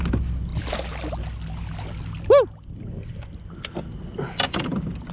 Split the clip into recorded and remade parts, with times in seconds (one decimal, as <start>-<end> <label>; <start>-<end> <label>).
0.0-5.1 recorded